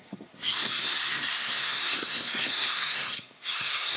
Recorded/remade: remade